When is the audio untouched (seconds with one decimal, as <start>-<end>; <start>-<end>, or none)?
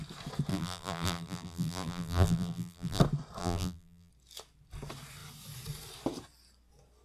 0.0-0.5; 3.0-3.4; 4.1-7.0